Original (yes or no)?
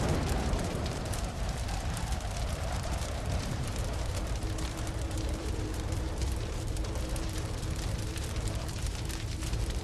no